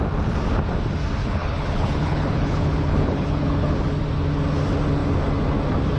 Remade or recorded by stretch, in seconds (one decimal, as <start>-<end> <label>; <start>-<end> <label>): 0.0-1.2 recorded; 1.2-3.7 remade; 3.7-6.0 recorded